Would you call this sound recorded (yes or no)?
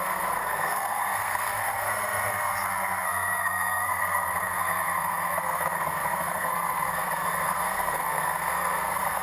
no